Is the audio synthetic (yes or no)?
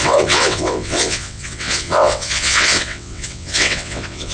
yes